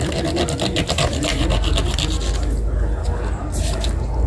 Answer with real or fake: real